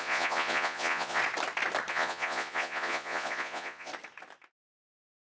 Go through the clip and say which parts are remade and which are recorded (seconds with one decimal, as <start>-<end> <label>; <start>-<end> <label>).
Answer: 0.0-1.2 remade; 1.2-1.9 recorded; 1.9-3.9 remade; 3.9-4.6 recorded; 4.6-5.4 remade